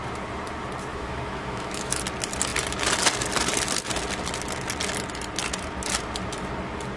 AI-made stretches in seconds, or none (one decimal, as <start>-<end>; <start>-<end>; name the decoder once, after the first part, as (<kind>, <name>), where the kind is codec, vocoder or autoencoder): 0.9-2.0 (autoencoder, DAC-VAE)